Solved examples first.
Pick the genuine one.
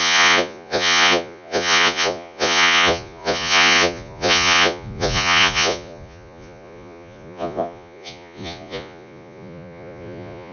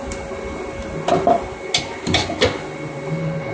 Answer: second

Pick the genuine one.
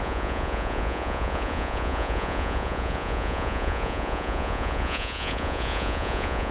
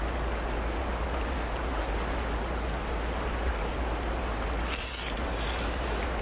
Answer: second